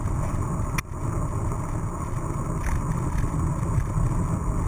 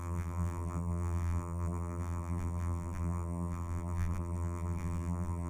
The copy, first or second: second